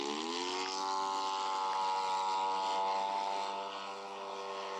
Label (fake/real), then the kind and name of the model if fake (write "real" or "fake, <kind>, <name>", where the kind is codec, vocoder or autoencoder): real